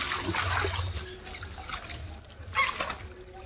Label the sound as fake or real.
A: real